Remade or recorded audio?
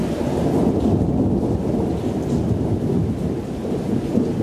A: recorded